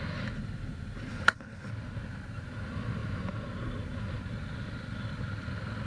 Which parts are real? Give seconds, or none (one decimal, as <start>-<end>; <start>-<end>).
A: 0.0-1.1; 1.7-5.9